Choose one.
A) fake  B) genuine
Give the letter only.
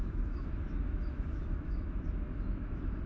A